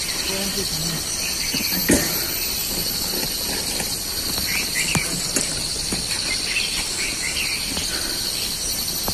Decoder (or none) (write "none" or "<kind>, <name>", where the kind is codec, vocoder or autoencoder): none